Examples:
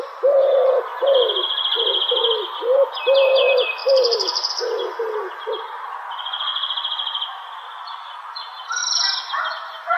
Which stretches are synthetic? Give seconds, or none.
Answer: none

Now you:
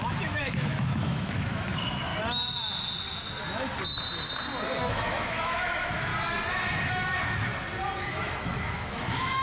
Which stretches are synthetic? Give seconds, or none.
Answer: 0.0-2.1; 4.8-6.1; 6.9-7.5; 8.1-9.4

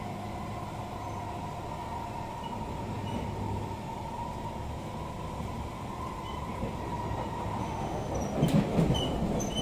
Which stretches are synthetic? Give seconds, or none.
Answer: 7.6-8.1

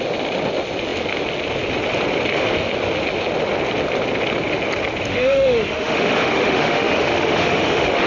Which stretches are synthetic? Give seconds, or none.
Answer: 5.1-8.1

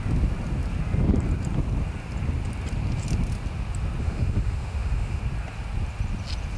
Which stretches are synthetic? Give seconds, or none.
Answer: 4.0-5.2

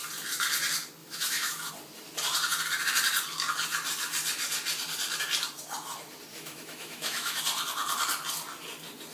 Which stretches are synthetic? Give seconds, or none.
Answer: 1.0-1.7; 6.3-7.4

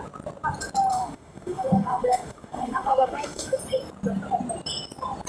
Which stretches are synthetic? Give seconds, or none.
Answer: 0.9-3.6